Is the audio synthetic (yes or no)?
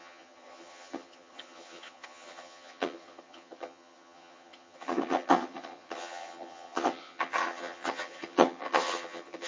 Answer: yes